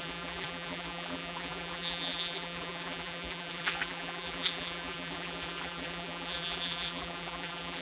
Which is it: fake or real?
fake